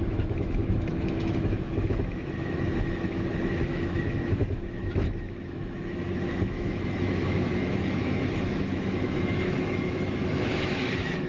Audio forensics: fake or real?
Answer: fake